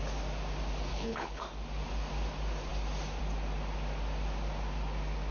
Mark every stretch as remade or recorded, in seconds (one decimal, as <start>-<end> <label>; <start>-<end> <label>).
0.0-0.9 recorded; 0.9-1.4 remade; 1.4-5.3 recorded